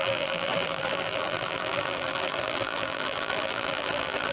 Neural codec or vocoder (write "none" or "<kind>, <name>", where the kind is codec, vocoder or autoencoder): vocoder, BigVGAN v2